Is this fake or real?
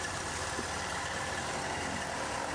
fake